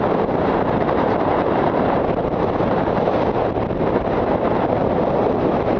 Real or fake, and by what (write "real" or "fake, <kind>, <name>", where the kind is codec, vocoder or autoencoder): fake, vocoder, BigVGAN v2